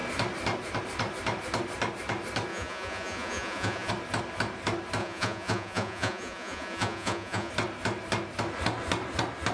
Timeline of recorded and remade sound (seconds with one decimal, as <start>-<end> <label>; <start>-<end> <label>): 0.0-2.5 recorded; 2.5-3.9 remade; 3.9-5.0 recorded; 5.0-7.5 remade; 7.5-9.5 recorded